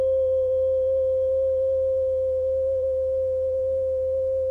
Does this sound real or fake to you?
fake